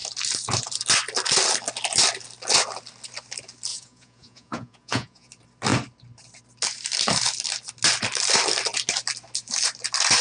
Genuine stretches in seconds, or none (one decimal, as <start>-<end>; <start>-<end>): 0.0-3.7; 5.3-10.2